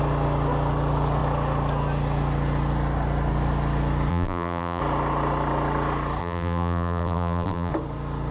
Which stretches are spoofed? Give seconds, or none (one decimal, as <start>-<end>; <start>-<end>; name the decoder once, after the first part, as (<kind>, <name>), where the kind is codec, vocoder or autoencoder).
4.1-4.8 (vocoder, BigVGAN v2); 6.2-7.7

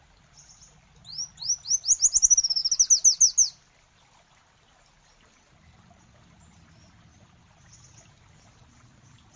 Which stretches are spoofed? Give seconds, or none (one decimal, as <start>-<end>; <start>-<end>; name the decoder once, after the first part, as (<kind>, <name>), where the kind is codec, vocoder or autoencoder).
none

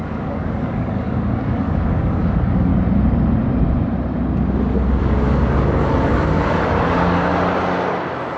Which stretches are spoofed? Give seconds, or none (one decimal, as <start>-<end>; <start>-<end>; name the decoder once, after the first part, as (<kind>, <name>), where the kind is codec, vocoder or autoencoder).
0.0-2.7 (codec, DAC); 5.0-7.3

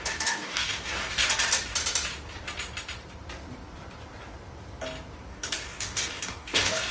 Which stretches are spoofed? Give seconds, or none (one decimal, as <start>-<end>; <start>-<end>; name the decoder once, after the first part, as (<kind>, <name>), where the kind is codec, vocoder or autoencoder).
0.0-1.2 (codec, DAC); 5.3-6.9

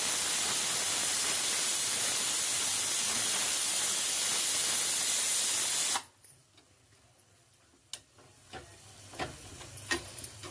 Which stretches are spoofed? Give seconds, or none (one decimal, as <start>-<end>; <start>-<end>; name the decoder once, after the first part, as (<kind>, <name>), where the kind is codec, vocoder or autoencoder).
none

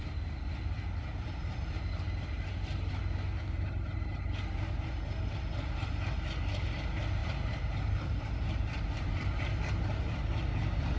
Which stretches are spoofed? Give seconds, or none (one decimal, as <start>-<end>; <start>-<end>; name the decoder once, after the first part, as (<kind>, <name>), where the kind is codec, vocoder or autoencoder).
1.1-1.8 (vocoder, BigVGAN v2); 7.2-9.7